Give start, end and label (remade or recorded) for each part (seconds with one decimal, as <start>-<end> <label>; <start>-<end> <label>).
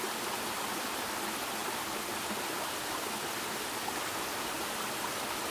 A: 0.0-5.5 recorded